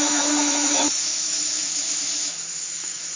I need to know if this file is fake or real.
fake